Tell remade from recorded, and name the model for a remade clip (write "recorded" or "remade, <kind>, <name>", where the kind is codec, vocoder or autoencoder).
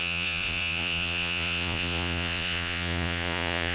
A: remade, vocoder, Vocos